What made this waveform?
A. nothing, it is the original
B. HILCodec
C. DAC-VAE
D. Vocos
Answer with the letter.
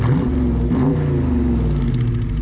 A